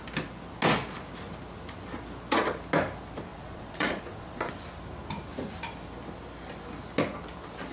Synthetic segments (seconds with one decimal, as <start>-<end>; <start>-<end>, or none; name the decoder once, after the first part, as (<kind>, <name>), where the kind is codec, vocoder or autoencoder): 3.3-4.5 (vocoder, Vocos)